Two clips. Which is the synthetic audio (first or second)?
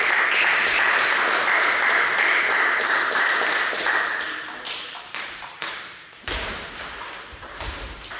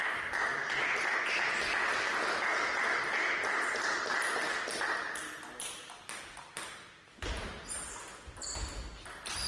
first